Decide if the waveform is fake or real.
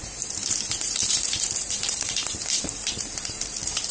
fake